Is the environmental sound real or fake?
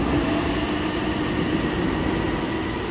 real